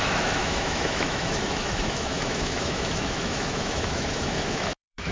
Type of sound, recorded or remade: remade